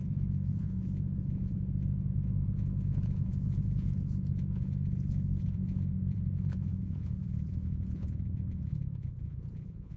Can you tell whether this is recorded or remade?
remade